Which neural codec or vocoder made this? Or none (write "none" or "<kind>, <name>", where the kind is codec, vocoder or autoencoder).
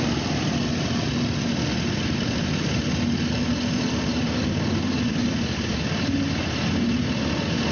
none